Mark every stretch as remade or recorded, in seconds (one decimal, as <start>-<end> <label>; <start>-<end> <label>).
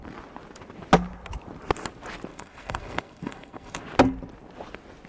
0.0-2.3 recorded; 2.3-3.8 remade; 3.8-5.1 recorded